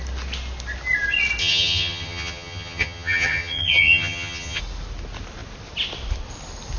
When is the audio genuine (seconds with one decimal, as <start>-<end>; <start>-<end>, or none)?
0.0-1.4; 4.6-6.8